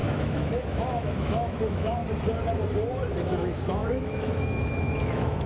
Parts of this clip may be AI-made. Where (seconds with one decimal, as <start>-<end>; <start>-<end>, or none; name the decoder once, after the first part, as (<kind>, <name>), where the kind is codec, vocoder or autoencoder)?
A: 0.0-2.0 (autoencoder, DAC-VAE); 3.1-5.5